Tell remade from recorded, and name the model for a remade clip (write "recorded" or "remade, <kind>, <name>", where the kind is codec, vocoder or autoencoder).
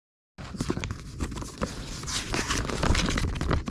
recorded